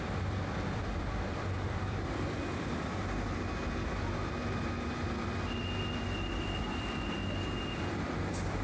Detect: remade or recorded remade